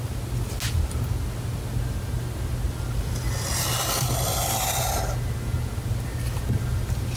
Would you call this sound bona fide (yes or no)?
yes